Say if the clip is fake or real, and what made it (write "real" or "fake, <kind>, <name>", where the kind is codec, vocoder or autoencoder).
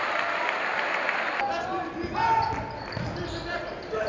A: real